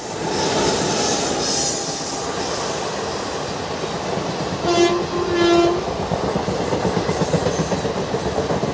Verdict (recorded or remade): recorded